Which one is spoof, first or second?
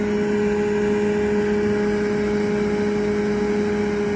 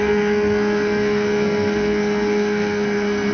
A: second